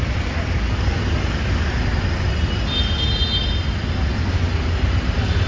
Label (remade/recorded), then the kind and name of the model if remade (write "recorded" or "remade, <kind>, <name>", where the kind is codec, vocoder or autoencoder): recorded